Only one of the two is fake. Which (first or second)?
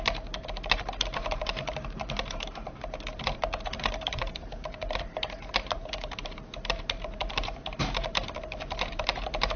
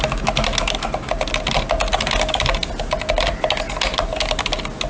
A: first